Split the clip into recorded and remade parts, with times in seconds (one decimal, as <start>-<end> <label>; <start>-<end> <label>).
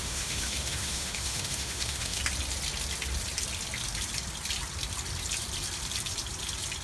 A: 0.0-2.2 remade; 2.2-6.8 recorded